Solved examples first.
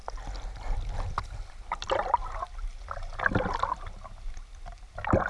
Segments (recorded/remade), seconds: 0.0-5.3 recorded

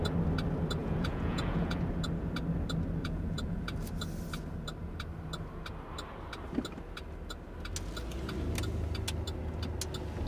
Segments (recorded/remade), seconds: 0.0-0.8 recorded; 0.8-1.8 remade; 1.8-3.0 recorded; 3.0-3.6 remade; 3.6-10.3 recorded

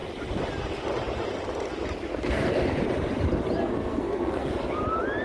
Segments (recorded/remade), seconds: 0.0-2.1 recorded; 2.1-2.6 remade; 2.6-3.6 recorded; 3.6-4.5 remade; 4.5-5.2 recorded